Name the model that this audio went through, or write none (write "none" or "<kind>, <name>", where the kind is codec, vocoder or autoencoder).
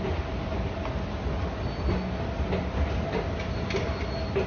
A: none